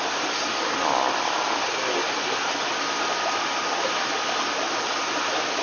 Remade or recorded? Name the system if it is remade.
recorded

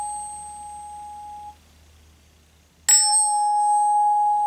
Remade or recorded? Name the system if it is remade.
recorded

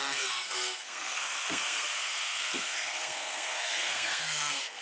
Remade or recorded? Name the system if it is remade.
remade, codec, SNAC